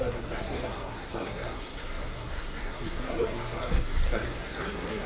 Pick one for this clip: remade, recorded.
remade